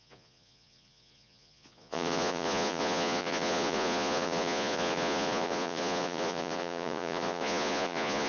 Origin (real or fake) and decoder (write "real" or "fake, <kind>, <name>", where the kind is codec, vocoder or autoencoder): fake, vocoder, Vocos